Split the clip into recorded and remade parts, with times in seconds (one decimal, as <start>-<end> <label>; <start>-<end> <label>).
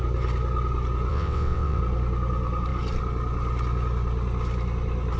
0.0-1.1 recorded; 1.1-1.8 remade; 1.8-5.2 recorded